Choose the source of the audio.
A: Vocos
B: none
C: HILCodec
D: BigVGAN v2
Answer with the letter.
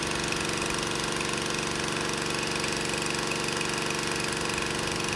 B